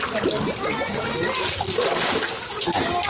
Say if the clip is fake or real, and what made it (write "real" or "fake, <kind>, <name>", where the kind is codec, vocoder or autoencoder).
real